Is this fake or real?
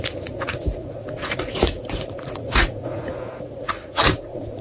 fake